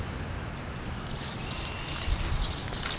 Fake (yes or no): no